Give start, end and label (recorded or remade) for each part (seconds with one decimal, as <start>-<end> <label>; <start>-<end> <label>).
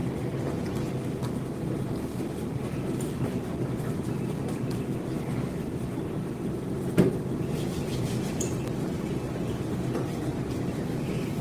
0.0-11.4 recorded